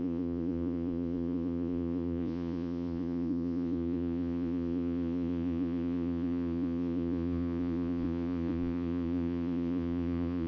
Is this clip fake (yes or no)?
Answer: yes